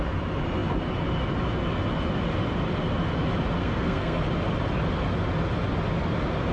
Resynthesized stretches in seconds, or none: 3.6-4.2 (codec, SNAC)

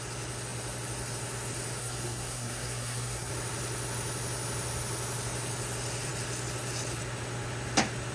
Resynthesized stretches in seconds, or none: 1.8-3.3 (codec, SNAC)

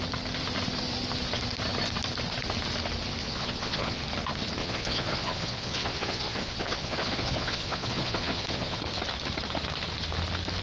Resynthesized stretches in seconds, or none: 3.2-4.0 (vocoder, Vocos); 4.6-8.8

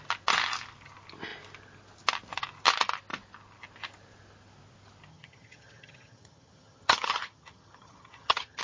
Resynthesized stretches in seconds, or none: 5.1-8.6 (vocoder, HiFi-GAN)

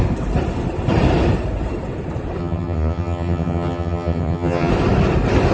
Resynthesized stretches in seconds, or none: 2.4-4.7 (vocoder, HiFi-GAN)

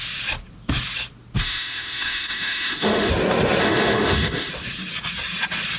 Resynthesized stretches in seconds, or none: 1.4-3.1 (autoencoder, DAC-VAE); 3.6-4.5